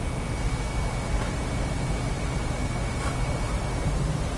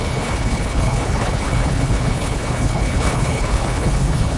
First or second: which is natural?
first